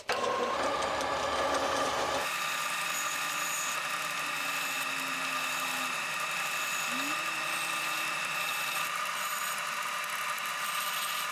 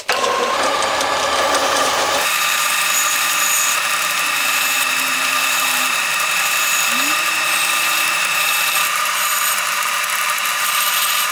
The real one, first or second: first